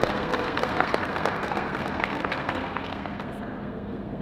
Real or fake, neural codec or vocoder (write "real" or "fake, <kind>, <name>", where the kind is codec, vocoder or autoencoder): fake, codec, SNAC